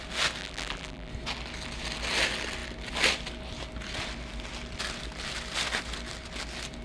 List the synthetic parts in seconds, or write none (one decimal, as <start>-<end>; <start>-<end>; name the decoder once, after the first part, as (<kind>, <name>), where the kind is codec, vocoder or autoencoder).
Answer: 0.4-1.1 (vocoder, BigVGAN v2)